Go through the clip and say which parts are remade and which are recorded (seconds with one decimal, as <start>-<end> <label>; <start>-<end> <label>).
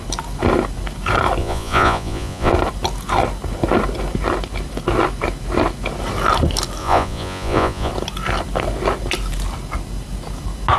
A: 0.0-1.4 recorded; 1.4-2.5 remade; 2.5-6.8 recorded; 6.8-7.9 remade; 7.9-10.8 recorded